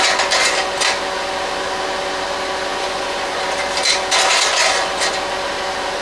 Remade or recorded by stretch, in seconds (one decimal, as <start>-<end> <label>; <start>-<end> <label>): 0.0-2.7 recorded; 2.7-3.4 remade; 3.4-4.5 recorded; 4.5-5.0 remade; 5.0-6.0 recorded